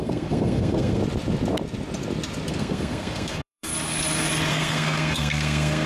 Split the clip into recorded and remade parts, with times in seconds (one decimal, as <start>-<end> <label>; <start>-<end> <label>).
0.0-1.0 remade; 1.0-2.5 recorded; 2.5-3.7 remade; 3.7-4.5 recorded; 4.5-5.9 remade